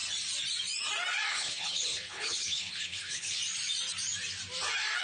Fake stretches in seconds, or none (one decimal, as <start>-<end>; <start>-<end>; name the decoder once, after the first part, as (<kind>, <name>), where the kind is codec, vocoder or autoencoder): 1.3-3.4 (codec, HILCodec)